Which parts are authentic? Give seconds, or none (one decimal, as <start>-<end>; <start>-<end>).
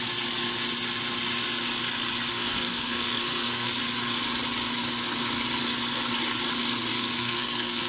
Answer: 0.0-2.3; 3.7-6.9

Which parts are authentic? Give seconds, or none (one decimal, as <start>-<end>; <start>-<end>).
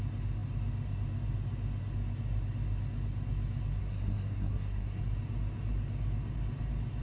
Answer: 0.0-3.8; 5.0-7.0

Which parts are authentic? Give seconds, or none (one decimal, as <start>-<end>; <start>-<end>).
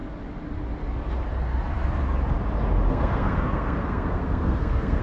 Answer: 0.0-2.9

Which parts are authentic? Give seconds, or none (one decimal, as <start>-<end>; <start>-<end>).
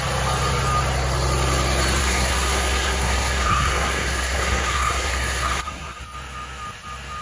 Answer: 0.0-2.0; 6.0-7.2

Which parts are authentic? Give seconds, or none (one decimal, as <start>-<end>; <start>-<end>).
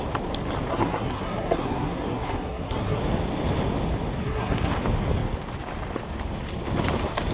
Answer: 0.0-0.7; 3.0-4.2; 4.7-7.3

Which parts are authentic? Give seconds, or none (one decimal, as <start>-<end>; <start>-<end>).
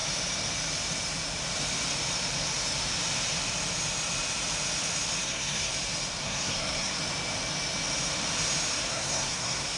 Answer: 0.0-5.2; 5.7-6.2; 7.0-8.9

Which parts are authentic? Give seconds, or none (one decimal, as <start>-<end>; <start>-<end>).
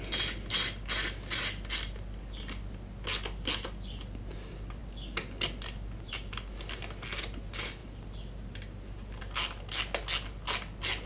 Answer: 0.0-11.1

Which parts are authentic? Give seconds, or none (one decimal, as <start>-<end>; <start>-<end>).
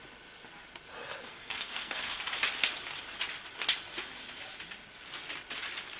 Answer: 0.0-1.3; 2.2-6.0